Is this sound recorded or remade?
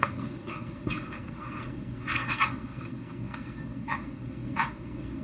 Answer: remade